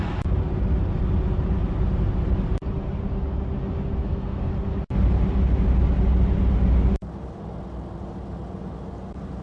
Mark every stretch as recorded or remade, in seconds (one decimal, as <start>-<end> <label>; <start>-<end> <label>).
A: 0.0-4.0 recorded; 4.0-4.5 remade; 4.5-9.4 recorded